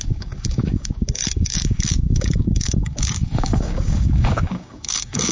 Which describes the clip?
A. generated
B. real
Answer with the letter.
A